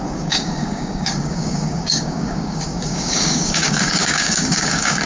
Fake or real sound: fake